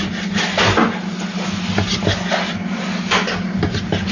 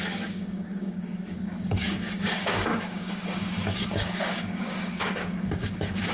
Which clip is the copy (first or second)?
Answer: second